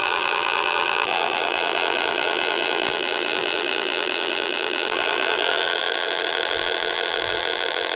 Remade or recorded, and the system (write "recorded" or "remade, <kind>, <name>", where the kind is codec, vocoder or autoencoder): remade, vocoder, BigVGAN v2